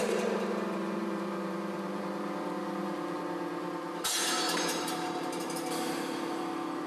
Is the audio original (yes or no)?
no